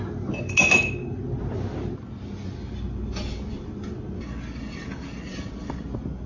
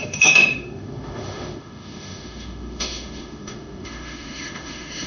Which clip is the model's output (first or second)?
second